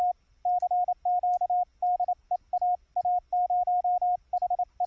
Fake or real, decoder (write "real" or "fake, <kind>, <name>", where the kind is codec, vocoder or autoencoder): real